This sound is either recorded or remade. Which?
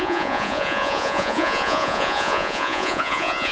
remade